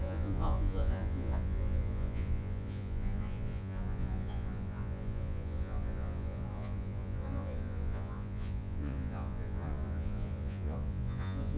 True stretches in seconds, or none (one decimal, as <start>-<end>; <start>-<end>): none